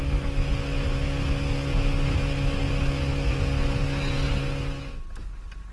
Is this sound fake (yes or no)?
no